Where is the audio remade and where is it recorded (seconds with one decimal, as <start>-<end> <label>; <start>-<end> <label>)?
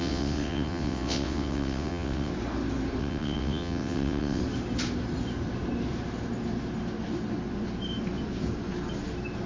0.0-2.3 remade; 2.3-3.0 recorded; 3.0-4.4 remade; 4.4-9.5 recorded